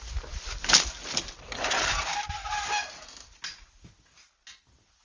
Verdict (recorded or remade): recorded